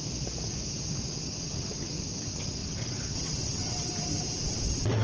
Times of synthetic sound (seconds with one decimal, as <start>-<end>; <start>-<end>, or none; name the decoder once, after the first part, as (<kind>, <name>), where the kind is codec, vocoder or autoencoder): 1.2-5.0 (vocoder, WaveNeXt)